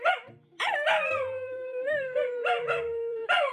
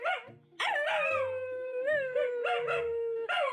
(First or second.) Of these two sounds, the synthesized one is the first